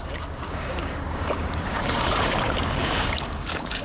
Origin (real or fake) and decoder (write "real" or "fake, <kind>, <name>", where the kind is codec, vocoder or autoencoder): fake, codec, DAC